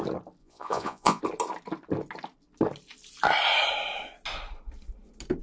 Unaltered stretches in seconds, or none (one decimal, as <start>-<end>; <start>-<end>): 0.0-0.4; 1.2-5.4